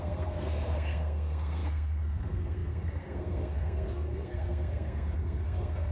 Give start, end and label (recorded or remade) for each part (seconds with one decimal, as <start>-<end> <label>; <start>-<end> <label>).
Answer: 0.0-5.9 remade